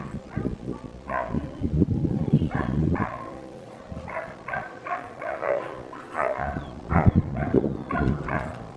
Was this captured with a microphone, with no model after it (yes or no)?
no